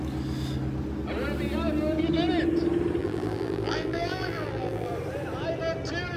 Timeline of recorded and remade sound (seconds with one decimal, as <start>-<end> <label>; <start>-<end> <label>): 0.0-3.0 recorded; 3.0-4.9 remade; 4.9-6.2 recorded